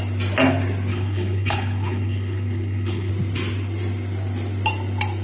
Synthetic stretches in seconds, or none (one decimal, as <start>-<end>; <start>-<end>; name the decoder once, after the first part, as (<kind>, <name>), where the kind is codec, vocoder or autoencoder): 0.9-3.1 (codec, HILCodec)